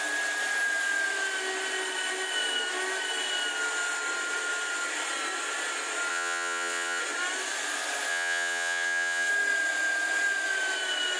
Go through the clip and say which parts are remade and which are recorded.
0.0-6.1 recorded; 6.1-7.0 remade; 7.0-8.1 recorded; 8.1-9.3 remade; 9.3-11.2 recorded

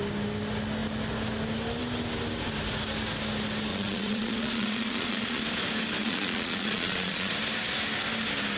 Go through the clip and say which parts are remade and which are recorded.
0.0-3.7 recorded; 3.7-5.4 remade; 5.4-6.0 recorded; 6.0-7.3 remade; 7.3-8.6 recorded